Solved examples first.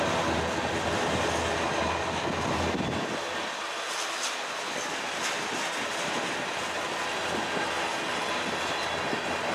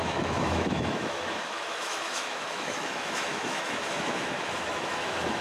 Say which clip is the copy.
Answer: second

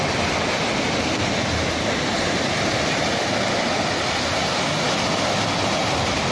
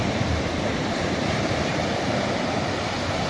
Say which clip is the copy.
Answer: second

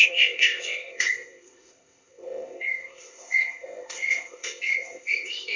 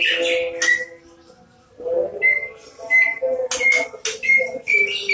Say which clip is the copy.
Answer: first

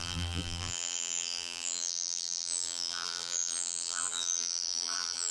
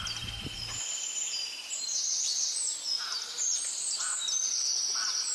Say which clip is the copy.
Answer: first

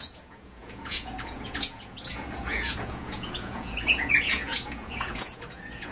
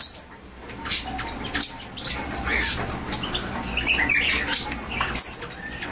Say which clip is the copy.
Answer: first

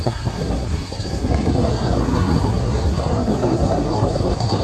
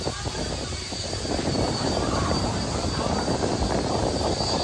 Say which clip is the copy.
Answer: first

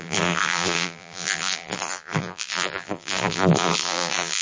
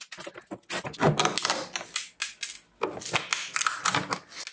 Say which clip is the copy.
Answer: first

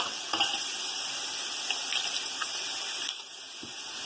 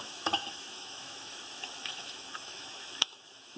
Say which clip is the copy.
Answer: second